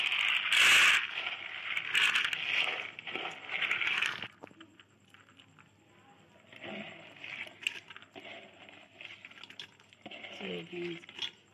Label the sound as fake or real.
real